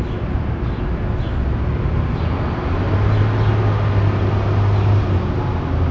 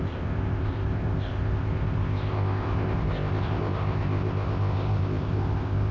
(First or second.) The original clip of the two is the first